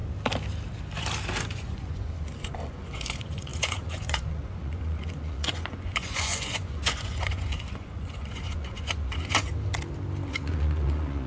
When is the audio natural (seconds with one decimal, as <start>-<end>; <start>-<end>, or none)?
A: 0.0-1.4; 9.5-10.3